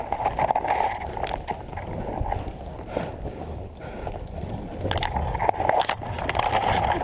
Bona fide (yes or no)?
yes